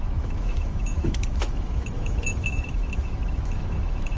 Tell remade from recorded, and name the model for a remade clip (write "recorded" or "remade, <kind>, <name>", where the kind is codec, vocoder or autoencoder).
remade, autoencoder, DAC-VAE